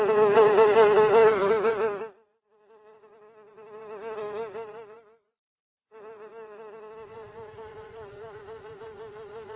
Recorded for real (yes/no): no